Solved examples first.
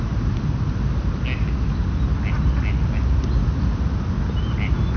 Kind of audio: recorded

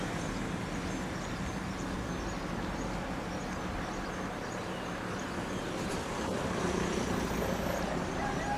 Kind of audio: recorded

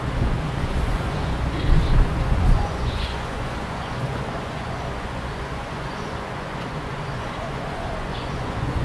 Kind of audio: remade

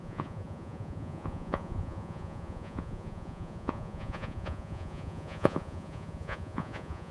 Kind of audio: remade